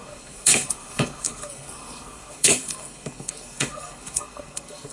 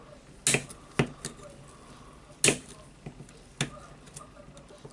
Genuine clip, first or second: second